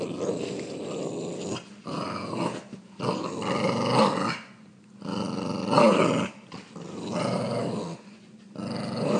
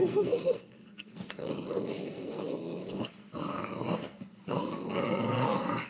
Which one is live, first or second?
first